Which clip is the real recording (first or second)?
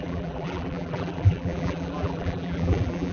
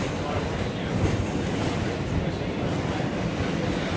second